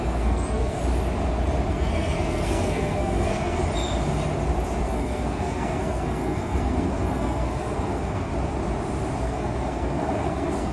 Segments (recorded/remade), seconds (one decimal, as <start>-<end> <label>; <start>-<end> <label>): 0.0-0.8 remade; 0.8-1.7 recorded; 1.7-3.6 remade; 3.6-4.8 recorded; 4.8-8.3 remade; 8.3-9.2 recorded; 9.2-10.7 remade